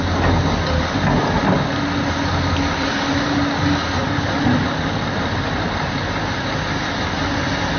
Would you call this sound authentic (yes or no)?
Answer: yes